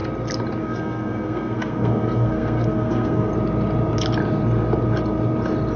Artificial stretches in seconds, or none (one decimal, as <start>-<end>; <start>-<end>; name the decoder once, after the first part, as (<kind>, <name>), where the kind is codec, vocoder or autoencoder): 0.6-3.3 (codec, SNAC)